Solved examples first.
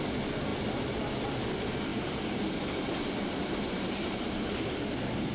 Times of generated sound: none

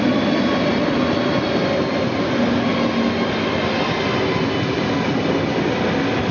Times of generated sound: none

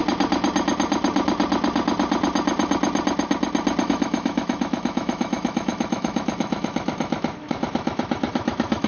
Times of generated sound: 3.8-8.9

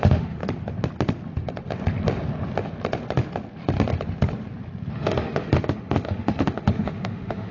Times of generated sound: 0.0-0.4; 4.9-7.5